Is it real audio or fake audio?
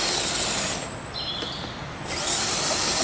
real